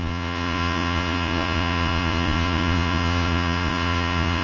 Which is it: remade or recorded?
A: remade